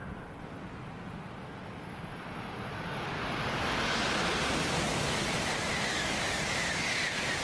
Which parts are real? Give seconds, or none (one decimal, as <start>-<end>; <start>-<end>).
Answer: 0.0-7.4